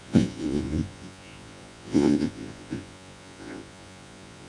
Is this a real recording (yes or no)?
no